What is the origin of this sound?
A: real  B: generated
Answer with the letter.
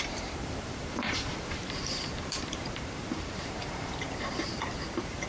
B